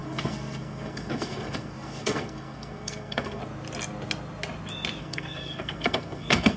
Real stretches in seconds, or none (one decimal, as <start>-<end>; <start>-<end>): 3.4-5.0